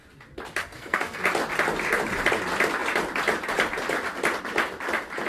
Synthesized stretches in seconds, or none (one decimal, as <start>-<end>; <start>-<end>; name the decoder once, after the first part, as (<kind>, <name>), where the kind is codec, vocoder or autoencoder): 0.6-1.2 (codec, SNAC)